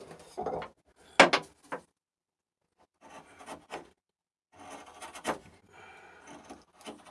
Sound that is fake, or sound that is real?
real